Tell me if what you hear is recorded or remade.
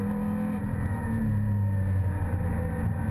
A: recorded